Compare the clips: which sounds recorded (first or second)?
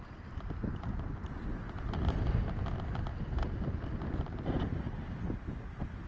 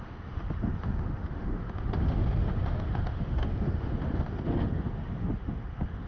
first